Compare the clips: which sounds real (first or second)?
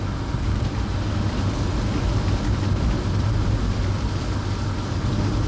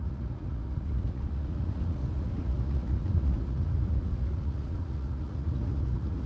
first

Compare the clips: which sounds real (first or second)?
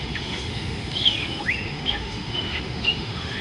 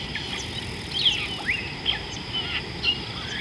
second